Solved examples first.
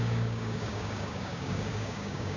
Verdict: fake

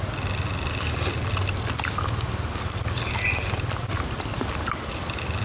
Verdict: real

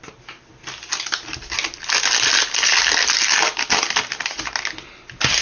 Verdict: real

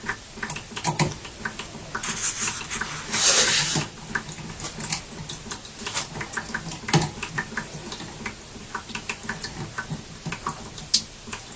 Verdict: real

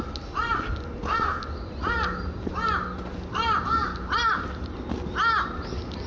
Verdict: real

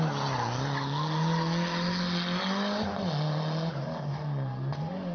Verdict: real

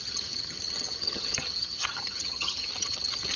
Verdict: fake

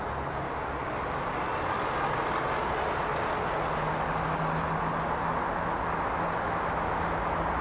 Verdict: real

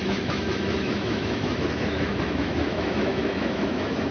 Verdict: fake